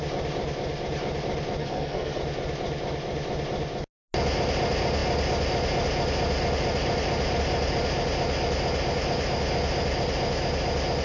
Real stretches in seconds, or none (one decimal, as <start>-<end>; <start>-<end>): 0.0-1.6; 2.2-11.0